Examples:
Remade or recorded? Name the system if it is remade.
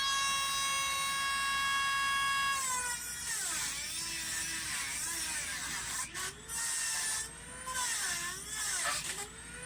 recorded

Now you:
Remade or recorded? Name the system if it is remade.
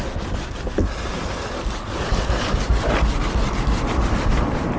recorded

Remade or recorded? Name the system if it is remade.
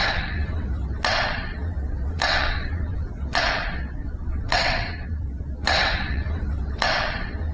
remade, vocoder, WaveNeXt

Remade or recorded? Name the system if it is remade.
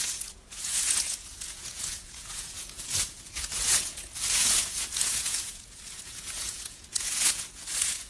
remade, vocoder, Vocos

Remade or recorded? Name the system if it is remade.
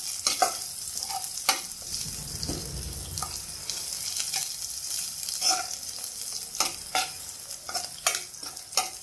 recorded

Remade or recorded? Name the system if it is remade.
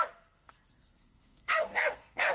remade, codec, SNAC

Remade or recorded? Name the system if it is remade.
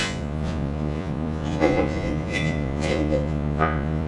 remade, vocoder, Vocos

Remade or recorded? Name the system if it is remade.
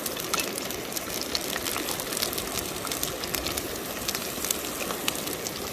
recorded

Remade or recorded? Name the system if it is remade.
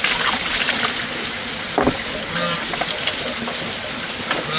recorded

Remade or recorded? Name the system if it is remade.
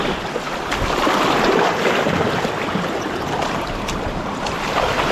remade, vocoder, BigVGAN v2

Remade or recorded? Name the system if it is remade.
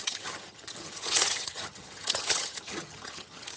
remade, vocoder, HiFi-GAN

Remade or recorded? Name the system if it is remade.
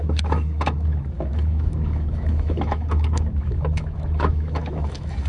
remade, autoencoder, DAC-VAE